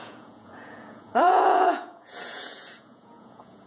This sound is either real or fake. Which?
fake